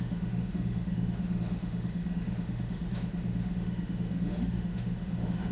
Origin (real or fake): fake